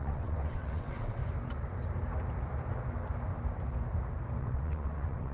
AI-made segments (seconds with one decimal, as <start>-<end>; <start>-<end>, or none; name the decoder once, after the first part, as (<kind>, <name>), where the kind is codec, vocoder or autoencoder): 0.0-1.2 (vocoder, WaveNeXt); 4.4-5.3